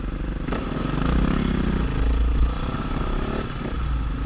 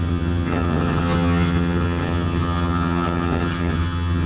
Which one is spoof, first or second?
second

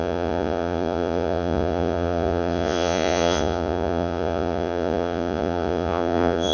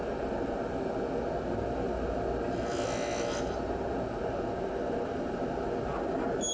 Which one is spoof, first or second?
first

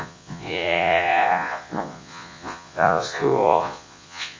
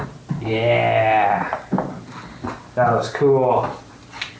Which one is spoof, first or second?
first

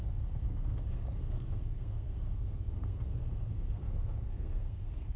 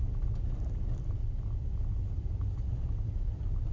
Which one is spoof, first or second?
first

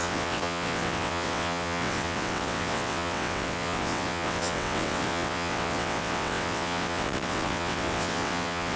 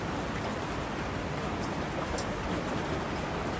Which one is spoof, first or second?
first